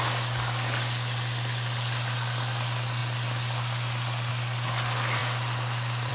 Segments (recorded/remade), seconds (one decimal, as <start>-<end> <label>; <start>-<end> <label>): 0.0-6.1 recorded